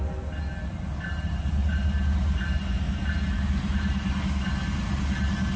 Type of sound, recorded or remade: recorded